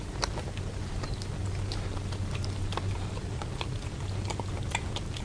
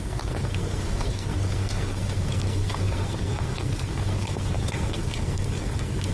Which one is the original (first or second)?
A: first